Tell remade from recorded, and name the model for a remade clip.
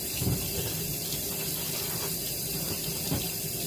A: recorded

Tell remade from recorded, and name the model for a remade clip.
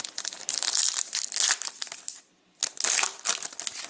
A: recorded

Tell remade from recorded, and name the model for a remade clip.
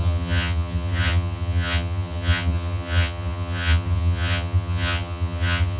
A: remade, vocoder, HiFi-GAN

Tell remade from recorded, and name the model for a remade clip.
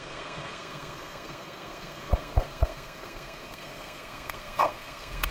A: remade, codec, SNAC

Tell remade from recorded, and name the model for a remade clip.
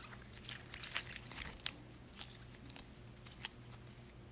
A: recorded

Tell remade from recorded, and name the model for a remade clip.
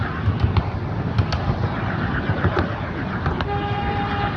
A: recorded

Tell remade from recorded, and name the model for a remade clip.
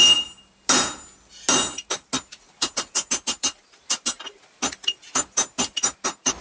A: recorded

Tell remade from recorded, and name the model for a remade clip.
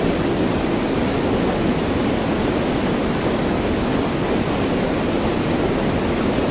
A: recorded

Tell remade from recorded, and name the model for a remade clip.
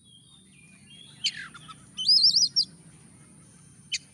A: recorded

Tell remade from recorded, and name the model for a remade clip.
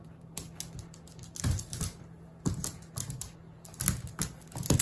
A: recorded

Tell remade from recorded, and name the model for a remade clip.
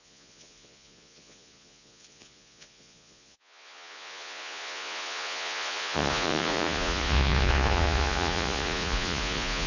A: remade, vocoder, Vocos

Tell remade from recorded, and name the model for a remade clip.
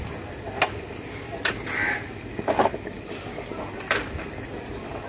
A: recorded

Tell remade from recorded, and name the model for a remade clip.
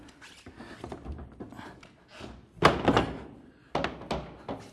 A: recorded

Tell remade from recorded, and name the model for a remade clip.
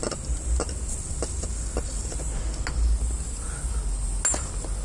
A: recorded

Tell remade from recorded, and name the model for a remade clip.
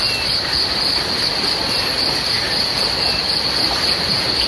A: recorded